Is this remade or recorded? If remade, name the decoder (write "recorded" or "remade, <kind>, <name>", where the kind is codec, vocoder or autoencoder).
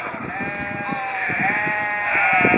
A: remade, vocoder, BigVGAN v2